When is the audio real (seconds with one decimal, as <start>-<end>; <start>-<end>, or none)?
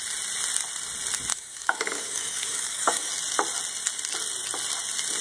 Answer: 0.0-1.3; 3.1-5.2